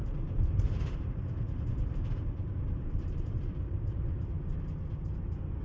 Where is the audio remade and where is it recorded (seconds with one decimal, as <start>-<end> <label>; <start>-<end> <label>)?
0.0-3.4 remade; 3.4-5.6 recorded